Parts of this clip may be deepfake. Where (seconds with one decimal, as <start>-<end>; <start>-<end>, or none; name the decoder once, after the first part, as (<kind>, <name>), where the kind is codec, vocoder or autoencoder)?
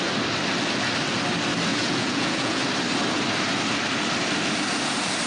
1.7-2.6 (vocoder, Vocos)